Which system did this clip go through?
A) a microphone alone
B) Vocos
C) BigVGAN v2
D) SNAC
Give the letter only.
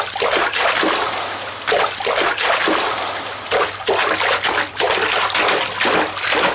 A